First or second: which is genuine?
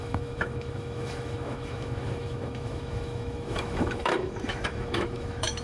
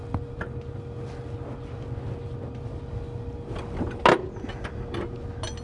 second